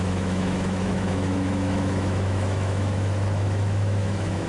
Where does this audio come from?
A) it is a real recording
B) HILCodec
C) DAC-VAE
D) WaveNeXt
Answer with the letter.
C